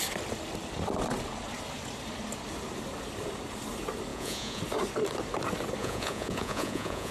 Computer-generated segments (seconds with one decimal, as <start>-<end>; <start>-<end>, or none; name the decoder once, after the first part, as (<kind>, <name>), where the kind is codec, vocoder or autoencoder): 4.1-4.6 (vocoder, Vocos); 5.8-7.1